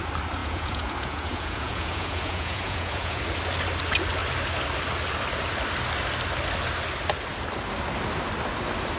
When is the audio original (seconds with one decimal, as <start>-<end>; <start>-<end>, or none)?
0.0-0.4; 3.2-9.0